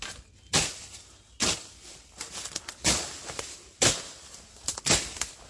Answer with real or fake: real